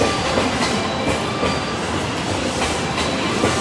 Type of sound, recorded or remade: recorded